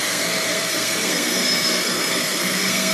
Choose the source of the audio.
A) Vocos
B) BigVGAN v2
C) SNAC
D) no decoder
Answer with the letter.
C